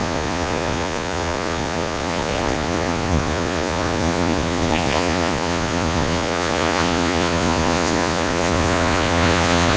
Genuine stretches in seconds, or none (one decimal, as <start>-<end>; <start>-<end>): none